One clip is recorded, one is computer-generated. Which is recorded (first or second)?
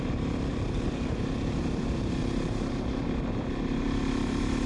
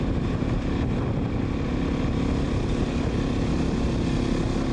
second